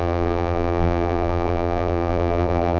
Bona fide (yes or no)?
no